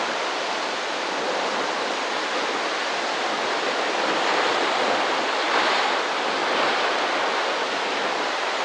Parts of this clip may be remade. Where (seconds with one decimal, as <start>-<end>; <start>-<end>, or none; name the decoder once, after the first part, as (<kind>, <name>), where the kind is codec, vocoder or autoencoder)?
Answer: none